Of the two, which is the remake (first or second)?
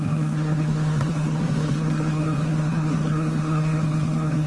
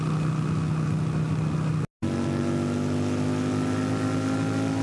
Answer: first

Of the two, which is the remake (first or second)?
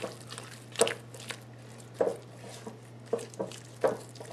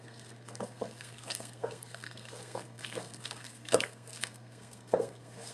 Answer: second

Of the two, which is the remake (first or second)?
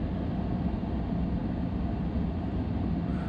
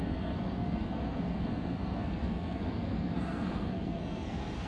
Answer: second